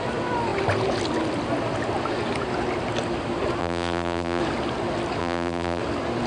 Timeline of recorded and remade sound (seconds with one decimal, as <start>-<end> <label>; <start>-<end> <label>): 0.0-3.6 recorded; 3.6-4.4 remade; 4.4-5.2 recorded; 5.2-5.8 remade; 5.8-6.3 recorded